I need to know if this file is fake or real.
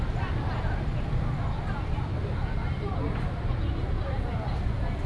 real